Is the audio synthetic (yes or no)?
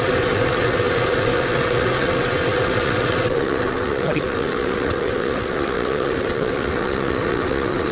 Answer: yes